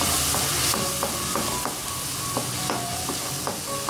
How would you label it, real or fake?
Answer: real